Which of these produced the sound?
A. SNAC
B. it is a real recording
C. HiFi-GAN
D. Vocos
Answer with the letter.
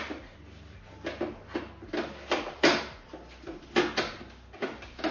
B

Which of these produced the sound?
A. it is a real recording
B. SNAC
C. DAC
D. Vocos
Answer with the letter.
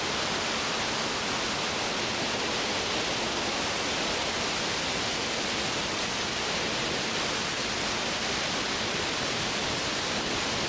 A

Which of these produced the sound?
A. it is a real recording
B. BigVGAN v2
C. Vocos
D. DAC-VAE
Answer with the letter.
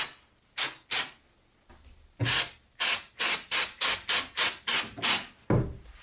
A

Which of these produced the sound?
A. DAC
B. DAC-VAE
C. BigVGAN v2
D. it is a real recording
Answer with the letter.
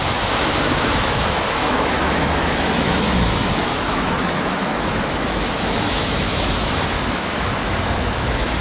B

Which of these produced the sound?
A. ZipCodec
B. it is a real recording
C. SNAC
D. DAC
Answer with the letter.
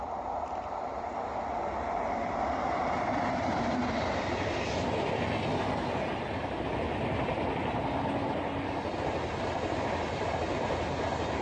B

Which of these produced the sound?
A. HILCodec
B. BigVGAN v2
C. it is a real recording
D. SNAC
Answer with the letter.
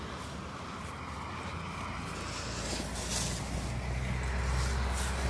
C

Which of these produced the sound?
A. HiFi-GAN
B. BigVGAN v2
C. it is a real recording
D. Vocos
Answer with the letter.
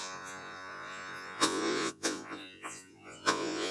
D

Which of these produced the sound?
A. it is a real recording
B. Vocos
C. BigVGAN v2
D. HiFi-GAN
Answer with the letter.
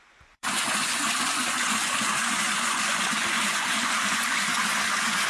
B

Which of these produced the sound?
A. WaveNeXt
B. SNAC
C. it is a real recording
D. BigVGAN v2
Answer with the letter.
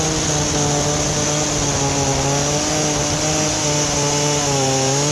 C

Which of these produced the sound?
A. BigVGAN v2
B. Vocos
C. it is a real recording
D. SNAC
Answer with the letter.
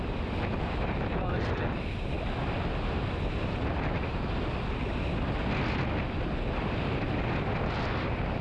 C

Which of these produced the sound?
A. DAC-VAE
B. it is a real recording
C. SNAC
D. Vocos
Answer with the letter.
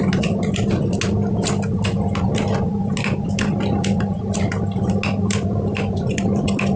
B